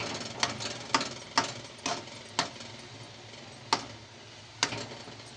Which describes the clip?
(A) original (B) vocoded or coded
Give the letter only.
A